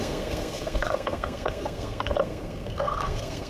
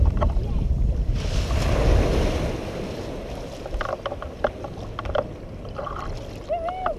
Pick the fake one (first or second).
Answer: first